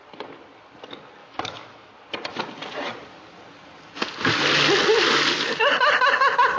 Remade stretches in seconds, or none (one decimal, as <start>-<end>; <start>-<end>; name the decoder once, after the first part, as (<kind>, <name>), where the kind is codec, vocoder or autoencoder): 1.2-1.9 (autoencoder, DAC-VAE)